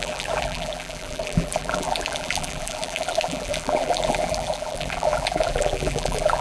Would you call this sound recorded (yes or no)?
no